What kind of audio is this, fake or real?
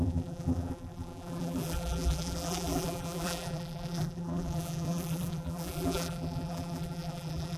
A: fake